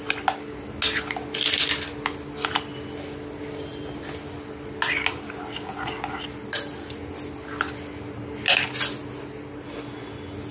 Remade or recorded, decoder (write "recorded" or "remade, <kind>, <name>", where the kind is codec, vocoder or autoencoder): recorded